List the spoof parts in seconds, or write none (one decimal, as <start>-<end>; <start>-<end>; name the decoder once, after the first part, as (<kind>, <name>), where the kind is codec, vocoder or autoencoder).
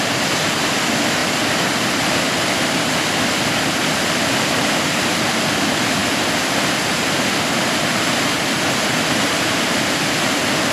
1.2-3.3 (vocoder, BigVGAN v2)